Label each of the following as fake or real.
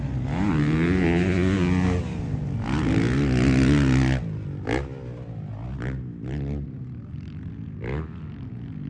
real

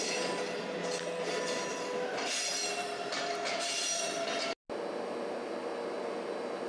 real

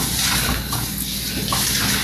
real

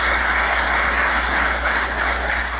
fake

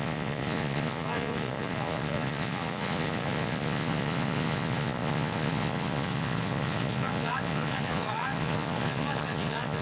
fake